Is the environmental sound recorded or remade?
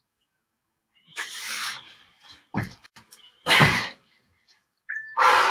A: remade